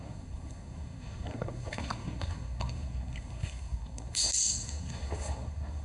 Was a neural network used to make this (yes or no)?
yes